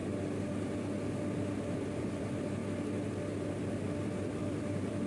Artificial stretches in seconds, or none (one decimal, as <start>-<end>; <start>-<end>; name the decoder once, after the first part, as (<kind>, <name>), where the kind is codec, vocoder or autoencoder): 1.5-2.6 (vocoder, BigVGAN v2); 3.7-5.1

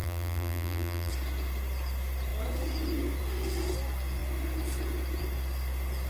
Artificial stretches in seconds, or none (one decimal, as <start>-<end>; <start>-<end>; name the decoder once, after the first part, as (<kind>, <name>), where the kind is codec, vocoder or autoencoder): 0.0-1.1 (vocoder, BigVGAN v2)

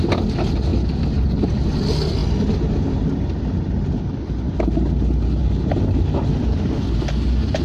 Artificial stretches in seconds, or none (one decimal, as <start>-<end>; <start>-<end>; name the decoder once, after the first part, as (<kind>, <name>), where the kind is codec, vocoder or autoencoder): none

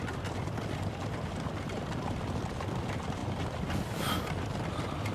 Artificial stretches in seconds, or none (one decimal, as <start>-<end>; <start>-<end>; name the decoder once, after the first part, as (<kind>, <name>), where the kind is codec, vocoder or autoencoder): none

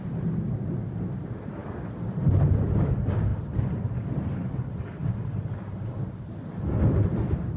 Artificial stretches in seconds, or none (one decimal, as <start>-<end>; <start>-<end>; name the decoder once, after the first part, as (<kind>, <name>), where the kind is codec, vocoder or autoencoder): 3.3-5.2 (vocoder, BigVGAN v2)